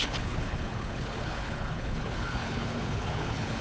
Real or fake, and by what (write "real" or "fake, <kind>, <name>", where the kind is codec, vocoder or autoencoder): fake, codec, HILCodec